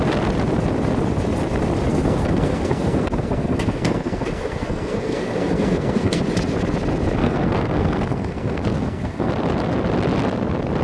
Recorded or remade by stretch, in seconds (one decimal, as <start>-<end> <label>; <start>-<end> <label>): 0.0-1.9 recorded; 1.9-6.2 remade; 6.2-7.2 recorded; 7.2-9.3 remade; 9.3-10.8 recorded